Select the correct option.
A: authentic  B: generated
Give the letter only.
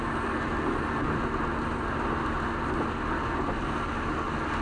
A